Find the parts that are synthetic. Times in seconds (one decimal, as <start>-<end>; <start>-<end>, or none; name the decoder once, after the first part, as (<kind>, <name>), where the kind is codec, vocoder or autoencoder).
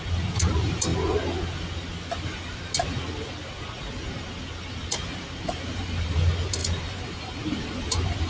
0.0-0.9 (vocoder, BigVGAN v2); 5.1-8.3